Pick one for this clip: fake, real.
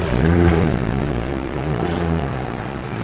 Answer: fake